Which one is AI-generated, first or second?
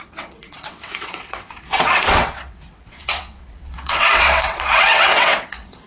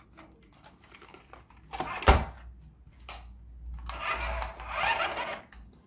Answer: first